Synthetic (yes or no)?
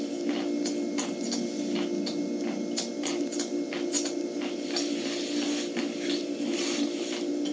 no